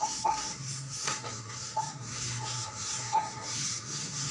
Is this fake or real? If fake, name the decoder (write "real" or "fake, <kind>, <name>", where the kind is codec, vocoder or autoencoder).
fake, codec, SNAC